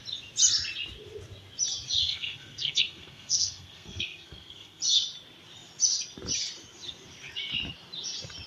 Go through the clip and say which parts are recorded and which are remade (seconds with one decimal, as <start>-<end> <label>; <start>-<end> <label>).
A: 0.0-2.0 recorded; 2.0-4.8 remade; 4.8-8.5 recorded